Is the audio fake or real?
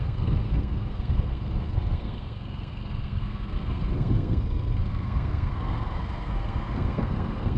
fake